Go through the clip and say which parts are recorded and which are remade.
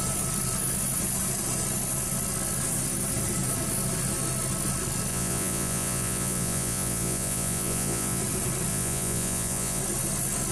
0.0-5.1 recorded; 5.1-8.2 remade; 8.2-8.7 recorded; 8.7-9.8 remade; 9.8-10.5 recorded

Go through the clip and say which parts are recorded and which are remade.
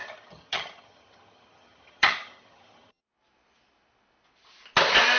0.0-3.0 remade; 3.0-5.2 recorded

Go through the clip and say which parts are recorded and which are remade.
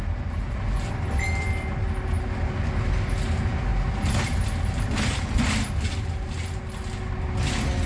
0.0-7.9 recorded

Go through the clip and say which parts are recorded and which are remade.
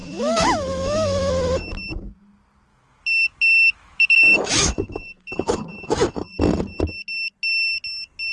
0.0-1.3 remade; 1.3-2.7 recorded; 2.7-6.4 remade; 6.4-8.3 recorded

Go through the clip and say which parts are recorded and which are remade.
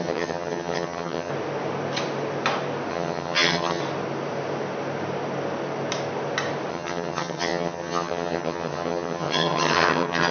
0.0-1.3 remade; 1.3-2.9 recorded; 2.9-3.8 remade; 3.8-6.7 recorded; 6.7-10.3 remade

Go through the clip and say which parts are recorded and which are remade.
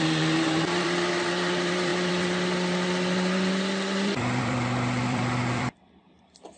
0.0-6.6 remade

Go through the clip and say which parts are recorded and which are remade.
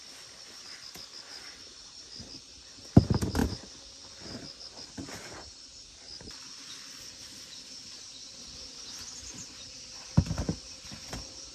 0.0-11.5 recorded